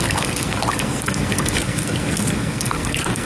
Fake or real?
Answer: fake